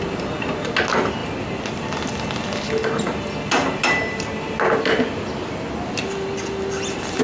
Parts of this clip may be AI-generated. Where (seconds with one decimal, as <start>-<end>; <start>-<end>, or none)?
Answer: none